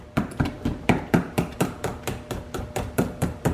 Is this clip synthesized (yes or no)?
yes